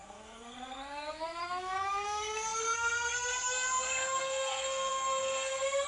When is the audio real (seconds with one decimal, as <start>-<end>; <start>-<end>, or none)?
none